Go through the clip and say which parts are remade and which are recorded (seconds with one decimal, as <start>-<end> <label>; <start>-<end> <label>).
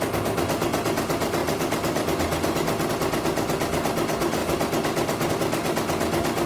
0.0-6.5 recorded